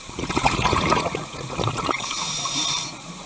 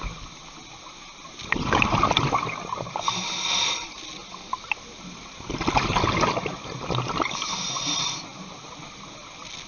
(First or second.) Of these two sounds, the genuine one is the second